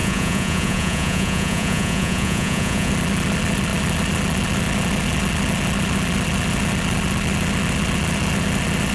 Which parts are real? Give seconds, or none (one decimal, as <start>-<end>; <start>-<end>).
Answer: 2.9-8.9